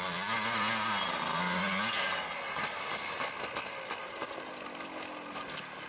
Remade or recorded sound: recorded